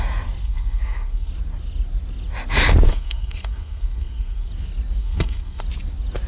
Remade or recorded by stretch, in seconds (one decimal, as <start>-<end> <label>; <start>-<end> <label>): 0.0-0.4 recorded; 0.4-1.3 remade; 1.3-2.9 recorded; 2.9-4.5 remade; 4.5-5.0 recorded; 5.0-5.6 remade; 5.6-6.3 recorded